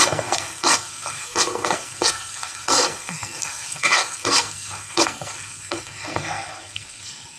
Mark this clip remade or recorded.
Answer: remade